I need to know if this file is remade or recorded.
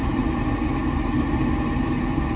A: recorded